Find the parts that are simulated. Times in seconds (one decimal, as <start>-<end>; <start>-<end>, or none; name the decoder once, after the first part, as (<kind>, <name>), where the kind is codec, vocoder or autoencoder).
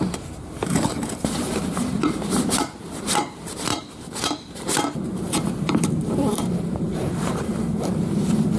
0.0-8.6 (vocoder, BigVGAN v2)